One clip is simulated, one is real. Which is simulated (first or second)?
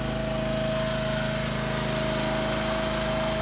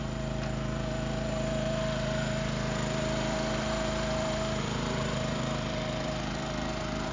second